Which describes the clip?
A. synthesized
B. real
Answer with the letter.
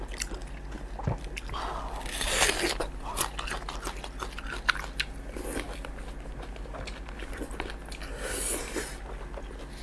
B